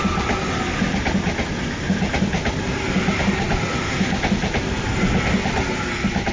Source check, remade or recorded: recorded